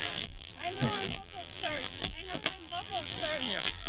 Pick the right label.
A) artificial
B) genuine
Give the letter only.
A